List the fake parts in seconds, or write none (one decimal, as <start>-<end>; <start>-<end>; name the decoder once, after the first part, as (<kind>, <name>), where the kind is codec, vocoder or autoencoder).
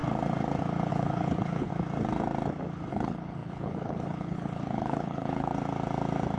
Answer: 0.9-1.7 (codec, HILCodec); 2.9-5.5